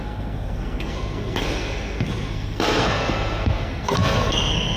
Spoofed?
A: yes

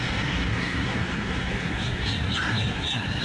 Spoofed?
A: yes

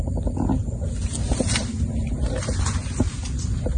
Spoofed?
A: no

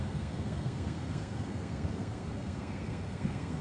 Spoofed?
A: yes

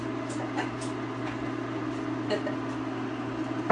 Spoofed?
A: no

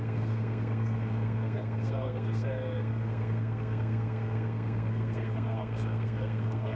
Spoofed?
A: yes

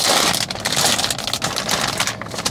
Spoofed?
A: no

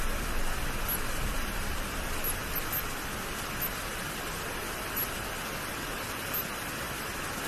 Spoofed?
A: no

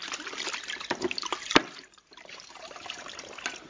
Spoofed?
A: no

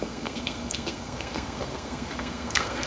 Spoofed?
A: yes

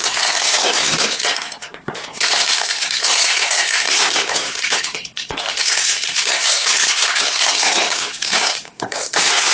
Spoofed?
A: yes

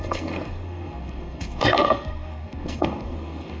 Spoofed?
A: yes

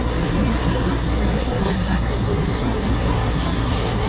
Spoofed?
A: yes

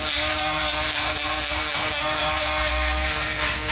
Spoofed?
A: yes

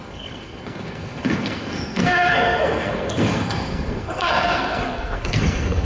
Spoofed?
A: yes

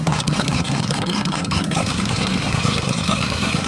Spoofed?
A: yes